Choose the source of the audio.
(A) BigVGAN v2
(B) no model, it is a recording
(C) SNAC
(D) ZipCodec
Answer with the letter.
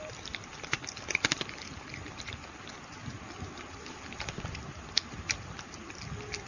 B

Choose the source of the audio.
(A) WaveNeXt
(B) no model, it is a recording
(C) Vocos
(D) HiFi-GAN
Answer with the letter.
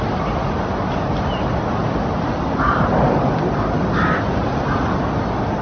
B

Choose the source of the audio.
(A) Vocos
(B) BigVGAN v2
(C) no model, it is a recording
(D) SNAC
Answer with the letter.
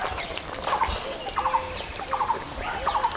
C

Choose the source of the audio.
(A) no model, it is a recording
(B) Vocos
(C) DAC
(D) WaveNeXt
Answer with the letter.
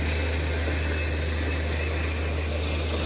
A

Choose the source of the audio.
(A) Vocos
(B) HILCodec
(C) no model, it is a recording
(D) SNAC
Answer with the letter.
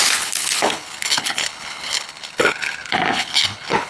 B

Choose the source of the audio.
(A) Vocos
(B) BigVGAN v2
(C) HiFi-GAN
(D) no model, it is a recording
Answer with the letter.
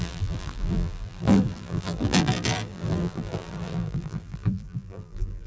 B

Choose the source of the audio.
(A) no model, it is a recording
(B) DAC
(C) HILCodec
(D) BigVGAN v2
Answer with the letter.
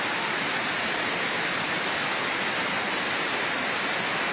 A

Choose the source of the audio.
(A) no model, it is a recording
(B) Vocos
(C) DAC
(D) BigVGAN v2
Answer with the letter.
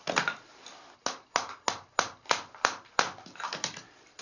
A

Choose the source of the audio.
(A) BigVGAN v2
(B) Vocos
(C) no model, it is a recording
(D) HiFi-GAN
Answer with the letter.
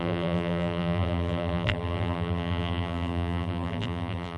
A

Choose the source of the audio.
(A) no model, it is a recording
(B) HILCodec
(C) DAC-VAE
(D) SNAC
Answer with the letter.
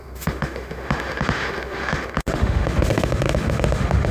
C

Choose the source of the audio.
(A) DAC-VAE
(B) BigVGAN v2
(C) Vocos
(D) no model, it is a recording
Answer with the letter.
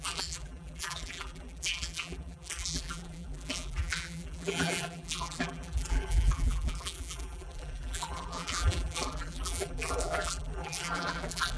B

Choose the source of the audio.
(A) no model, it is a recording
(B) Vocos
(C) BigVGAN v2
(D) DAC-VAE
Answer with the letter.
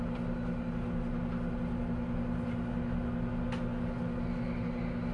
A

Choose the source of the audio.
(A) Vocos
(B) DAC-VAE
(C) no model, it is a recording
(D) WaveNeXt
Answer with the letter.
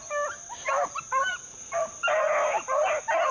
C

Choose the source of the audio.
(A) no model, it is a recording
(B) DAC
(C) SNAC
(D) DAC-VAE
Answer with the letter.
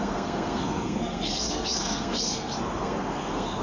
C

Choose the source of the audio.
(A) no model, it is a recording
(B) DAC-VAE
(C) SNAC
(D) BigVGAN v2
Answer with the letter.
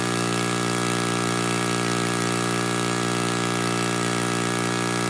A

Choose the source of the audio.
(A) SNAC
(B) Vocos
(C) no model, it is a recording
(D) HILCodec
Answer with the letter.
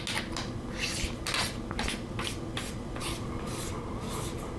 C